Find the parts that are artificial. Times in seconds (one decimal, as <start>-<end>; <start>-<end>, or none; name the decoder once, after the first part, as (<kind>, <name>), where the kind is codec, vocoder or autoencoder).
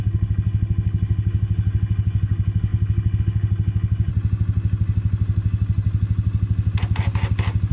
0.0-4.1 (codec, HILCodec)